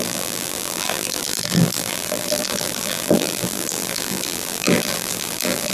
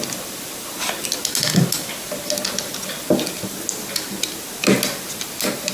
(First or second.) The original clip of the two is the second